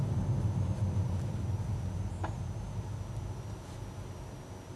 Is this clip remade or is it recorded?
recorded